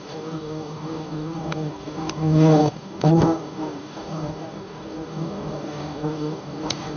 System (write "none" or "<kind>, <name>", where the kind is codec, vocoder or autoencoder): codec, DAC